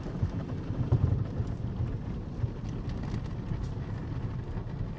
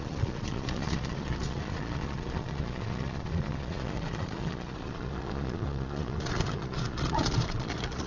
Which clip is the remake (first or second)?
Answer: second